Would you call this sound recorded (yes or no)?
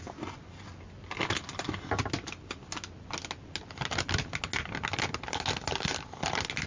yes